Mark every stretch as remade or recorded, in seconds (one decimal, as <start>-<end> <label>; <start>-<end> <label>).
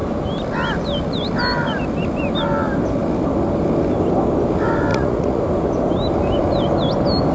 0.0-4.9 recorded; 4.9-5.4 remade; 5.4-7.3 recorded